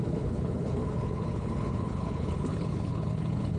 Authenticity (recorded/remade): remade